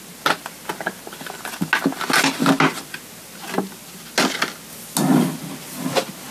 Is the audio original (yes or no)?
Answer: yes